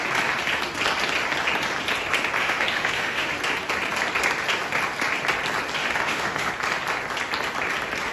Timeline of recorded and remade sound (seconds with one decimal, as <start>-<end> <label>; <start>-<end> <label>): 0.0-2.4 recorded; 2.4-3.3 remade; 3.3-5.8 recorded; 5.8-6.5 remade; 6.5-8.1 recorded